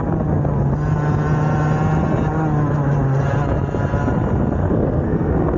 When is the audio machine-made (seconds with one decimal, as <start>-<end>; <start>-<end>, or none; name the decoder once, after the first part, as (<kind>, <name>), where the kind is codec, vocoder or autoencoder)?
4.6-5.6 (codec, SNAC)